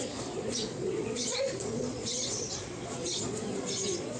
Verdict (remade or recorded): remade